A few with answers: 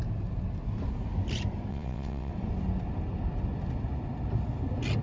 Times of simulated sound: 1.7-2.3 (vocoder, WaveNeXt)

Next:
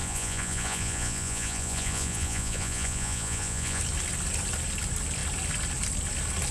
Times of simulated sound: 0.0-3.8 (vocoder, Vocos)

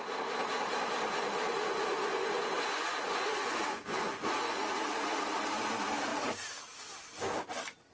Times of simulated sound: 2.1-4.6 (vocoder, Vocos)

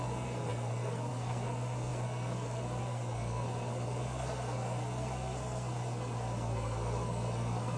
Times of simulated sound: 0.0-7.8 (codec, SNAC)

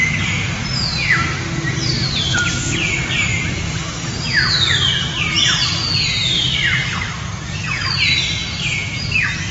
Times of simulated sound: 6.2-7.0 (vocoder, BigVGAN v2)

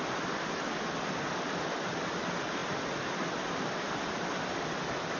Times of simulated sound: none

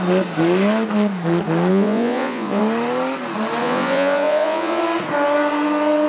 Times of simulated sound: 1.7-2.6 (vocoder, Vocos); 3.6-4.8